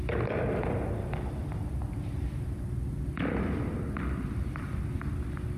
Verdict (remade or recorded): recorded